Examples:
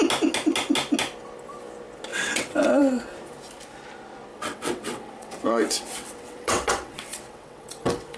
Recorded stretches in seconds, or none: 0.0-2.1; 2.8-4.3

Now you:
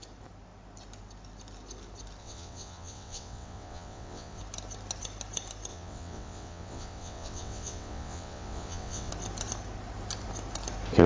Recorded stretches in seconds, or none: 0.0-2.2; 4.4-5.7; 9.1-11.1

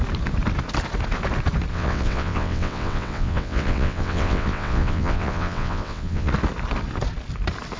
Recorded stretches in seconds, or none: 0.0-1.7; 6.3-7.8

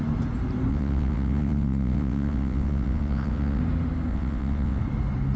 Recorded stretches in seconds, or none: 0.0-0.7; 3.6-4.1; 4.8-5.4

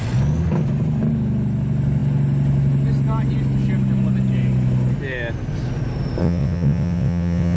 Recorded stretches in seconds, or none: 0.0-6.2

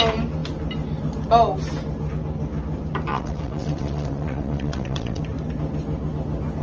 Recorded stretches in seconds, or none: 0.0-3.1; 5.2-6.6

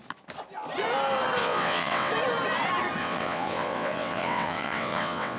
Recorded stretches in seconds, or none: 0.0-1.4; 2.1-3.0

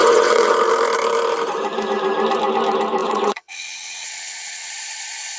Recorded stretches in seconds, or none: 0.5-3.0; 4.7-5.4